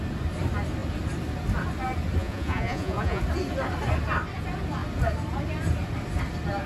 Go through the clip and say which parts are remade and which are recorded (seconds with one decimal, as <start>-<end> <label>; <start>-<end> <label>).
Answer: 0.0-2.2 recorded; 2.2-3.2 remade; 3.2-6.7 recorded